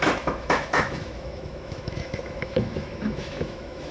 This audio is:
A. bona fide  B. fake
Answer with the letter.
B